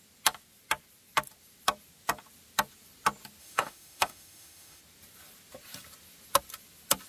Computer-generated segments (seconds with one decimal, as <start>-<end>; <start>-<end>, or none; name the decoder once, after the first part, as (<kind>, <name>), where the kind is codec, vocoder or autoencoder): 3.4-4.8 (autoencoder, DAC-VAE)